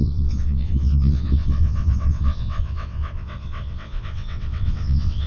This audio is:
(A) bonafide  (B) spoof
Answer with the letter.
B